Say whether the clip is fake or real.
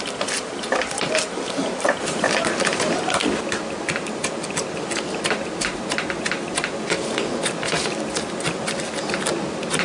real